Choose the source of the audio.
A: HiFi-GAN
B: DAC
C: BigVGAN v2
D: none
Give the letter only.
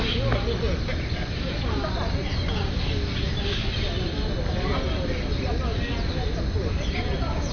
D